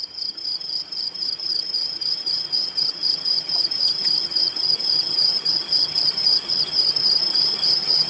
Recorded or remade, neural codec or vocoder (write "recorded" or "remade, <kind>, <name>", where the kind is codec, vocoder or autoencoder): remade, vocoder, HiFi-GAN